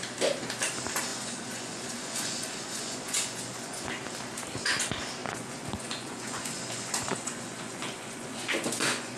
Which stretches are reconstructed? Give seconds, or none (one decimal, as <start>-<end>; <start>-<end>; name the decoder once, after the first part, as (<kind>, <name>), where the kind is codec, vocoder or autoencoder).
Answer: 1.1-3.9 (vocoder, Vocos); 5.2-9.2